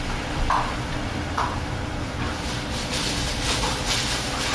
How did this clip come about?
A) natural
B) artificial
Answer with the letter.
B